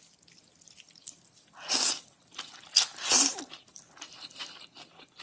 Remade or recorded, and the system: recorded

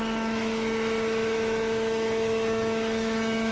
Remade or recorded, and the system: remade, autoencoder, DAC-VAE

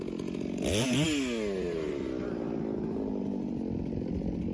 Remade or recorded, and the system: recorded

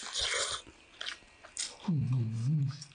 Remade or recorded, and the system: recorded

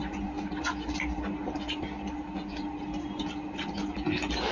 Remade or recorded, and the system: recorded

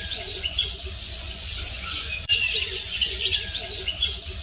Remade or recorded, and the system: remade, vocoder, Vocos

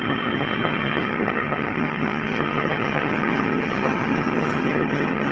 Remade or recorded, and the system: remade, vocoder, HiFi-GAN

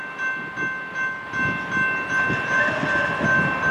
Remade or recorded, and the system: recorded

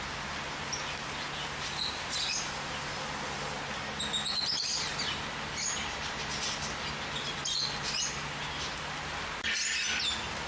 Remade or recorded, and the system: recorded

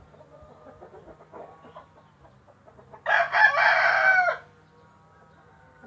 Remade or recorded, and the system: recorded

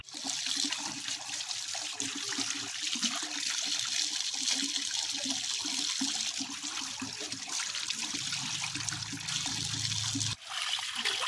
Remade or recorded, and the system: recorded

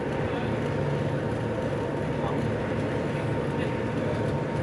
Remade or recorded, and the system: recorded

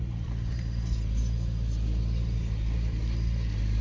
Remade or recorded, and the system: recorded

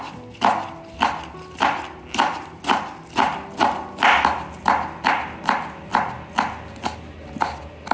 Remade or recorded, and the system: recorded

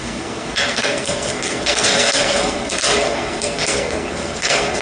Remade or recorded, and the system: remade, codec, SNAC